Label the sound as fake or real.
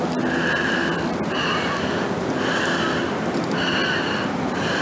real